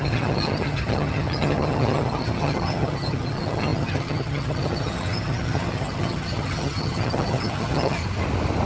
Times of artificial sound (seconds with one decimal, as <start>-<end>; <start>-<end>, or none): 0.0-8.0